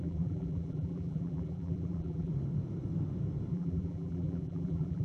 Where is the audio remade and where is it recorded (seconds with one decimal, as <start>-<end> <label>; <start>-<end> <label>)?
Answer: 0.0-2.3 remade; 2.3-3.5 recorded; 3.5-5.0 remade

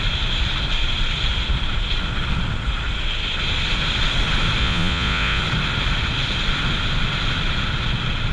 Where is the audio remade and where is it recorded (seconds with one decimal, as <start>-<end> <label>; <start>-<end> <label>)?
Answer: 0.0-4.6 recorded; 4.6-5.4 remade; 5.4-8.3 recorded

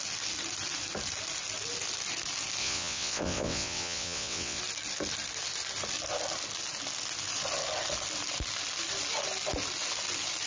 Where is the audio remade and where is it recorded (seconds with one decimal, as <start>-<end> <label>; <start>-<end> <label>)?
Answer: 0.0-2.6 recorded; 2.6-4.6 remade; 4.6-10.5 recorded